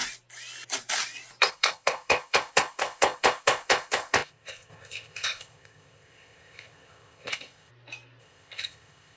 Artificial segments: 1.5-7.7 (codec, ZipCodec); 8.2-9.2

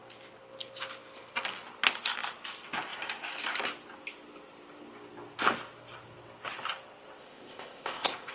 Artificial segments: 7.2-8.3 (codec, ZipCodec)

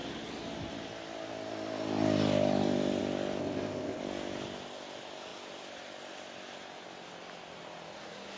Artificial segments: 3.4-4.0 (codec, ZipCodec)

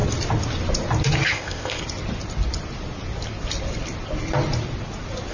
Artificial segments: 1.3-1.8 (codec, ZipCodec)